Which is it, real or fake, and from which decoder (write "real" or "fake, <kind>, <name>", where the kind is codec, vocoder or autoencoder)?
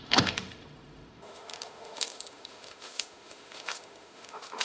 fake, autoencoder, DAC-VAE